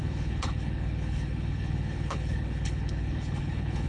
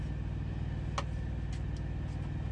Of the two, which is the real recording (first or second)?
second